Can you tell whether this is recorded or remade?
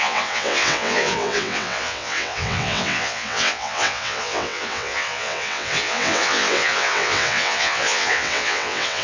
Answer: remade